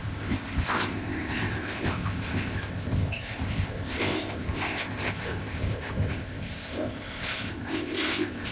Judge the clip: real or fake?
fake